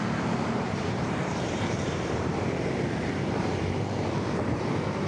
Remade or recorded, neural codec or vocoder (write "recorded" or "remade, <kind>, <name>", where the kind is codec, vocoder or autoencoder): remade, vocoder, BigVGAN v2